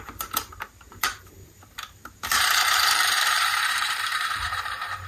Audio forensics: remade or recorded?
remade